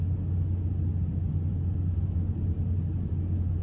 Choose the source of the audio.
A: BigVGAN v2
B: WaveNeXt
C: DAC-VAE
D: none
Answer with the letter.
D